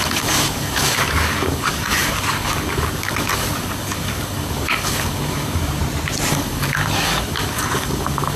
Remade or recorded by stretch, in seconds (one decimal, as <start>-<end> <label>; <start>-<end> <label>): 0.0-5.8 remade; 5.8-6.3 recorded; 6.3-8.4 remade